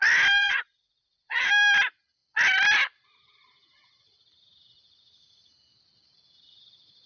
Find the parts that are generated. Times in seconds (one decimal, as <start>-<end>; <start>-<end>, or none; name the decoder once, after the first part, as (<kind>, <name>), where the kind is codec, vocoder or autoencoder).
0.4-1.5 (vocoder, Vocos)